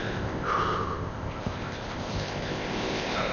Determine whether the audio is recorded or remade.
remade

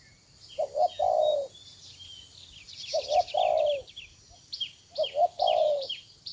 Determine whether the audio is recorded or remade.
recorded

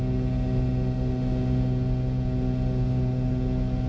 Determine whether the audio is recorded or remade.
recorded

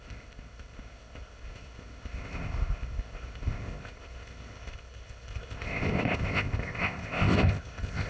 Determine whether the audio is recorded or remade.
remade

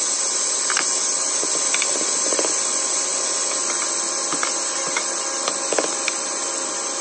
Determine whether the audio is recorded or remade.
recorded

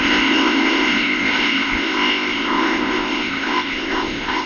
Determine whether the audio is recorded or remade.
remade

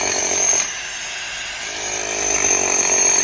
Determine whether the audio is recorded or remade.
recorded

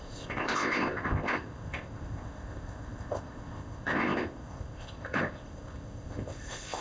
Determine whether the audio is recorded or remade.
remade